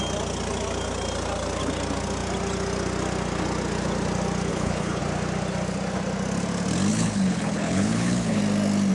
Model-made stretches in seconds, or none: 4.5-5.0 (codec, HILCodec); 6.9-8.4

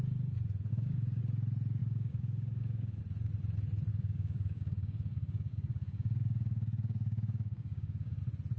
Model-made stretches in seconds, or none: 0.7-1.2 (codec, DAC); 1.8-3.0; 3.9-8.2